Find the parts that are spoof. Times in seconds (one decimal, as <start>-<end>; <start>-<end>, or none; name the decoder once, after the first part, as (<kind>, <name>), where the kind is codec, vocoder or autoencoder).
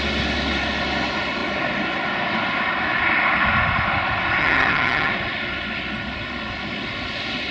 4.4-5.1 (vocoder, HiFi-GAN)